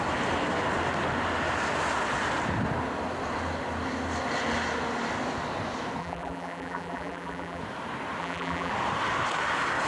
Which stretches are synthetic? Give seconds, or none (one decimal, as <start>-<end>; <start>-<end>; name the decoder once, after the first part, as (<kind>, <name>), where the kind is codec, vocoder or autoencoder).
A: 6.0-7.6 (vocoder, BigVGAN v2); 8.2-8.7